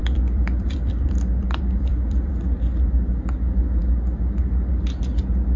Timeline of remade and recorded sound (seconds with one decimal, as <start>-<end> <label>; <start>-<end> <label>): 0.0-2.3 remade; 2.3-5.6 recorded